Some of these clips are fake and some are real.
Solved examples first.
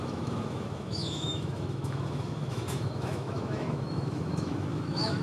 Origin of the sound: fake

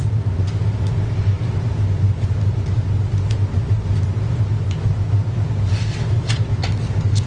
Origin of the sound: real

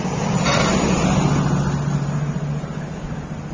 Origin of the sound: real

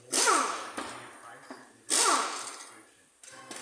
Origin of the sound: real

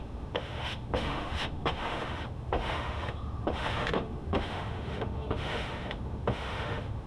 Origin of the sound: fake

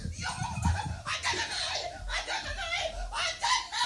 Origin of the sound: real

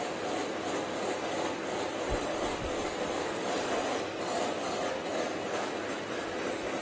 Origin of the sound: real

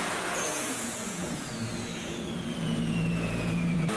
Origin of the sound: fake